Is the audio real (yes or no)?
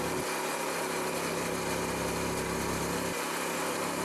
yes